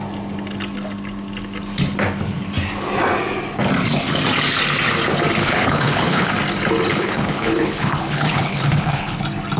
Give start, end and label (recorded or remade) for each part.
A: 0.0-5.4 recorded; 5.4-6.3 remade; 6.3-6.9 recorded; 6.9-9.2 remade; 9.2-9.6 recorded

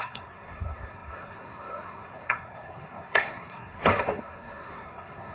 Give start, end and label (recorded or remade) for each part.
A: 0.0-5.3 remade

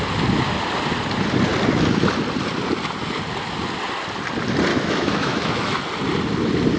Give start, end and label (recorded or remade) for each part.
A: 0.0-4.7 recorded; 4.7-5.8 remade; 5.8-6.8 recorded

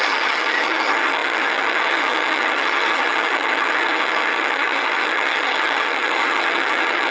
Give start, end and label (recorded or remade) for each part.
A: 0.0-7.1 remade

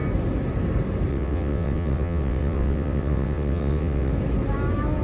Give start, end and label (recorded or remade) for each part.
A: 0.0-1.1 recorded; 1.1-4.1 remade; 4.1-5.0 recorded